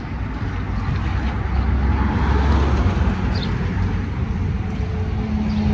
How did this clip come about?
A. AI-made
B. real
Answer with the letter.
B